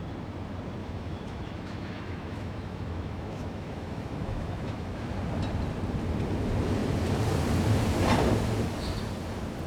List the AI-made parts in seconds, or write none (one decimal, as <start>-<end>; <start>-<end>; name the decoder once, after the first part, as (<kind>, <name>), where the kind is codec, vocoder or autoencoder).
0.8-5.1 (autoencoder, DAC-VAE)

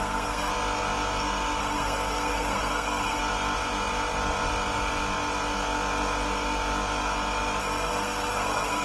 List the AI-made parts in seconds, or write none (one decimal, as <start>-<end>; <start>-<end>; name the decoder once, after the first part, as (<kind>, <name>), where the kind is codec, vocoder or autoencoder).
0.0-0.5 (codec, SNAC); 1.6-3.2; 7.6-8.8

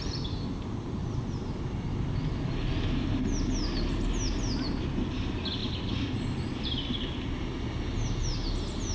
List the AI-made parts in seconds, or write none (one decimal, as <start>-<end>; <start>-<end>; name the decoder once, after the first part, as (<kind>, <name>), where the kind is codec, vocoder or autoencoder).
none

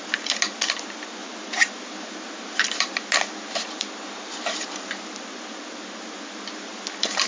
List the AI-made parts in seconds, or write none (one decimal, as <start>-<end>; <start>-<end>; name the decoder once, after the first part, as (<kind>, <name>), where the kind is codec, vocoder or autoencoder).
none